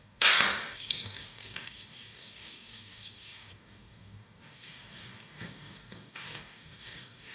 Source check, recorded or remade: remade